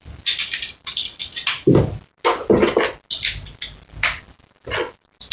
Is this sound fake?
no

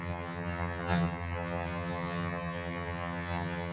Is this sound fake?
yes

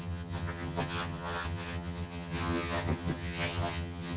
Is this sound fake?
yes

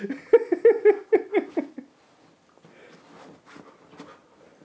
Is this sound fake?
no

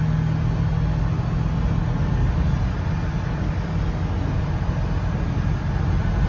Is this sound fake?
no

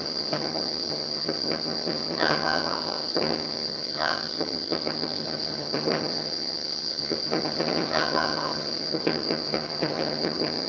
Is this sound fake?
yes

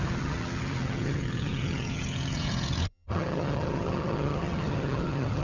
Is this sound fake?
yes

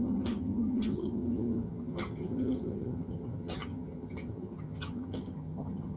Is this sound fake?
yes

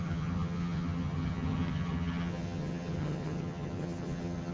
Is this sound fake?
yes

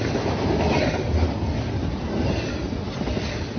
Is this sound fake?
no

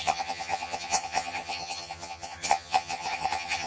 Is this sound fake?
yes